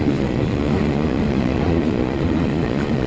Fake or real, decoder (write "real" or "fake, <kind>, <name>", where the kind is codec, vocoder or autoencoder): fake, vocoder, Vocos